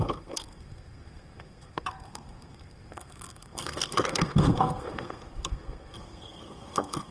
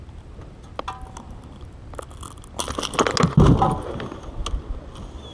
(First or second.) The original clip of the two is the second